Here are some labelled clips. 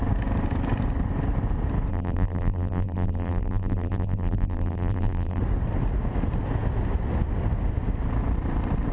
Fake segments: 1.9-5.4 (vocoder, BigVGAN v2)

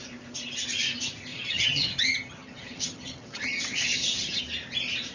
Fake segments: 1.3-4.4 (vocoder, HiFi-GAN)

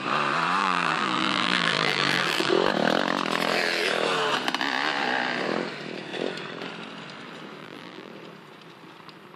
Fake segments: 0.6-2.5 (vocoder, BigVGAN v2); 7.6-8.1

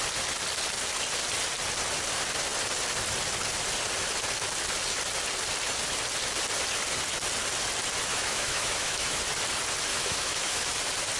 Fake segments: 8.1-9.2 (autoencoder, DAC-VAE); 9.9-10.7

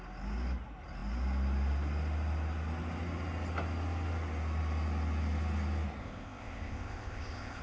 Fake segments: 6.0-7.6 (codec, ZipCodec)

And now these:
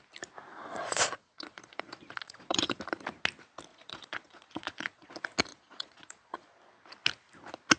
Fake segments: 0.5-2.8 (vocoder, Vocos); 3.7-5.1; 5.5-6.5